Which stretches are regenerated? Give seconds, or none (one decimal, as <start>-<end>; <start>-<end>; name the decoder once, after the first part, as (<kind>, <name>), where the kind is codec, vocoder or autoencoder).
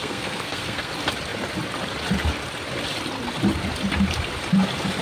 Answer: 0.0-0.9 (codec, SNAC)